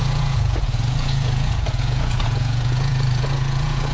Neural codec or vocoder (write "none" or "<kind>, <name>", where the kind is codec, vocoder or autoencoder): vocoder, Vocos